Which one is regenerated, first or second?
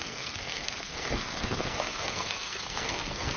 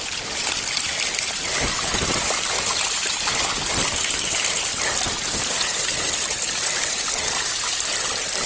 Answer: first